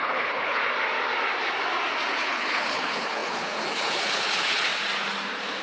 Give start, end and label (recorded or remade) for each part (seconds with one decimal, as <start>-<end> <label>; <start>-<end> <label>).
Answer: 0.0-0.6 remade; 0.6-2.1 recorded; 2.1-4.7 remade; 4.7-5.6 recorded